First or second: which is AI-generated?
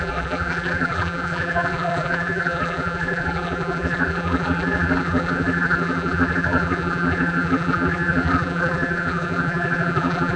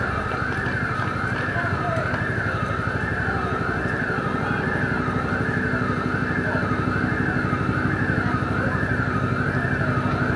first